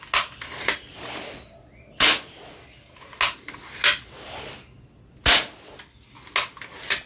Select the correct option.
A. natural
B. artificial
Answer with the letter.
A